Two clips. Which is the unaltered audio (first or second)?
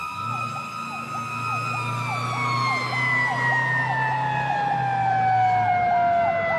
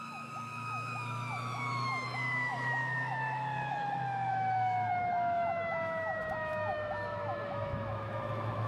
first